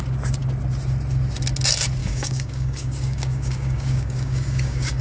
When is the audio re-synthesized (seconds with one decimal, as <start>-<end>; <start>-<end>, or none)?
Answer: 2.0-5.0